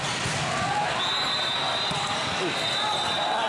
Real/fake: real